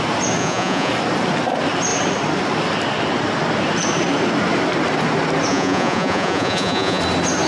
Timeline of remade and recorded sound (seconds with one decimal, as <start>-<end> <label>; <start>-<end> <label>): 0.0-0.4 recorded; 0.4-0.9 remade; 0.9-5.5 recorded; 5.5-7.0 remade; 7.0-7.5 recorded